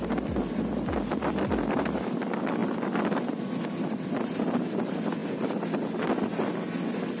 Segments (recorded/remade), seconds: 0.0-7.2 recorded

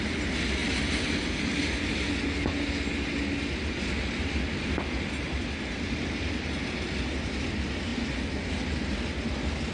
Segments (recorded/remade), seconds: 0.0-9.7 recorded